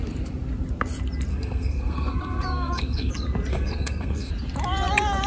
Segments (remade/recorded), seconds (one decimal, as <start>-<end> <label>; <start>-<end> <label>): 0.0-1.3 recorded; 1.3-3.1 remade; 3.1-3.5 recorded; 3.5-4.3 remade; 4.3-5.3 recorded